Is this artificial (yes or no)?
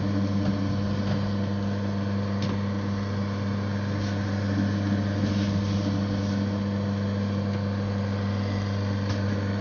no